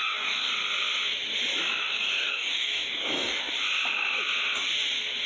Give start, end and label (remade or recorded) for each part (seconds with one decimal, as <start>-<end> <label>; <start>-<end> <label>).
0.0-0.5 remade; 0.5-1.8 recorded; 1.8-3.4 remade; 3.4-5.3 recorded